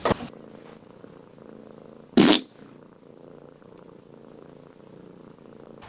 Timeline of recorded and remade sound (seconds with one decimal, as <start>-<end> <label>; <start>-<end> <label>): 0.0-5.9 recorded